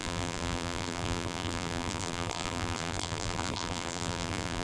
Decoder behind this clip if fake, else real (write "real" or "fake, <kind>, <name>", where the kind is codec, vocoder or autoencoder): fake, vocoder, BigVGAN v2